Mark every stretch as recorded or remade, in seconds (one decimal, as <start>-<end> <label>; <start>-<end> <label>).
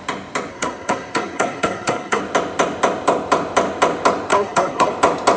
0.0-0.5 recorded; 0.5-2.2 remade; 2.2-4.3 recorded; 4.3-4.9 remade; 4.9-5.4 recorded